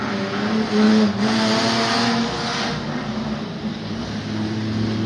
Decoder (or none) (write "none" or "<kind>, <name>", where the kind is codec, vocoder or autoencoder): none